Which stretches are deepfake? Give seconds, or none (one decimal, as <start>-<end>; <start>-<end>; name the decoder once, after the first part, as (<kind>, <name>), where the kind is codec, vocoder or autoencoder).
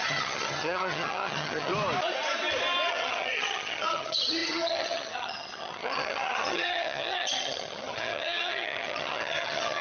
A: 0.0-1.7 (vocoder, HiFi-GAN); 2.9-9.8